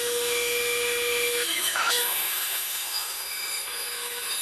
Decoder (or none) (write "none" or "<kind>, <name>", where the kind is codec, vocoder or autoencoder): autoencoder, DAC-VAE